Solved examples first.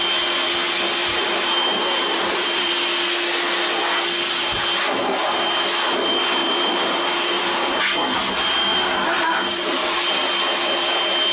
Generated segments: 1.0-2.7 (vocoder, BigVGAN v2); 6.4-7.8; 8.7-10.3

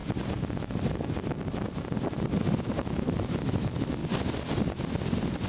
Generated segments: 2.8-4.0 (autoencoder, DAC-VAE)

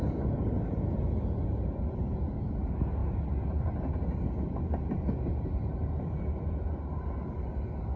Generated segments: none

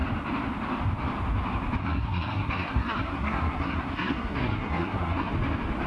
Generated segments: 1.8-5.3 (codec, SNAC)

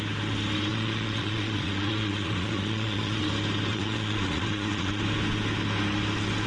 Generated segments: 0.7-3.2 (vocoder, Vocos); 3.7-5.0

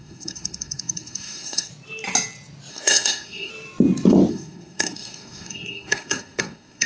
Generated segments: 0.0-1.7 (codec, SNAC); 2.7-3.5; 4.3-6.9

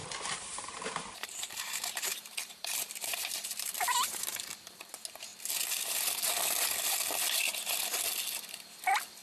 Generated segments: 0.0-4.5 (vocoder, BigVGAN v2)

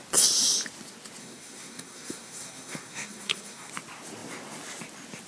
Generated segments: 1.2-3.7 (codec, SNAC)